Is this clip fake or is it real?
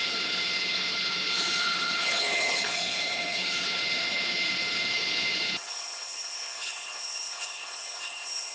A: fake